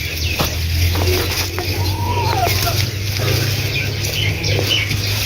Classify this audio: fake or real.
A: real